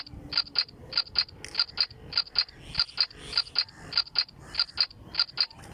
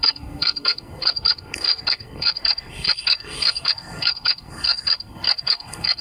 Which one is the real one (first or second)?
first